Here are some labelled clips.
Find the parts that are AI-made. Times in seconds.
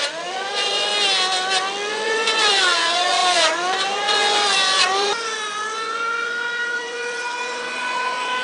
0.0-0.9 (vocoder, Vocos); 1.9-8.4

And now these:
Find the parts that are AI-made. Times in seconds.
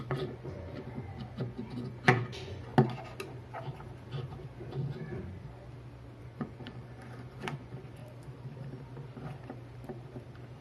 0.0-2.7 (vocoder, Vocos); 6.2-8.0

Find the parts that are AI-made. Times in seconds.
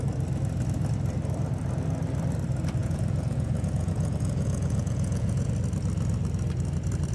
2.8-5.5 (vocoder, Vocos)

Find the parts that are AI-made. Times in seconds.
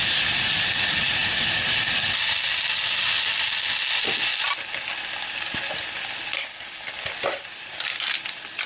none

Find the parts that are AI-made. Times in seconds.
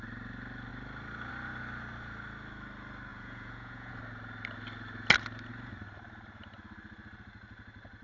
3.1-3.9 (vocoder, Vocos)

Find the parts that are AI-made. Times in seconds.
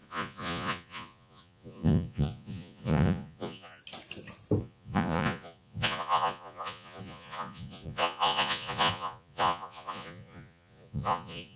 0.0-3.8 (vocoder, Vocos); 4.6-11.6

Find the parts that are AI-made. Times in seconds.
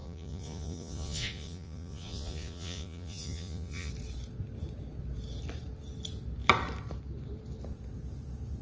0.0-3.9 (vocoder, Vocos)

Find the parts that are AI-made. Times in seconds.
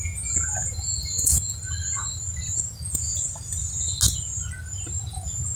0.0-1.6 (vocoder, Vocos); 2.5-3.1; 5.1-5.6